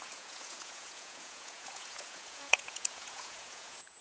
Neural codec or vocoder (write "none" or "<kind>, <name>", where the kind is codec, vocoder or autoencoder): vocoder, Vocos